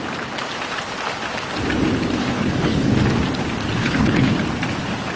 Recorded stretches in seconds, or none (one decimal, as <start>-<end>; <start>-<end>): 0.0-2.2; 2.9-3.8; 4.3-5.2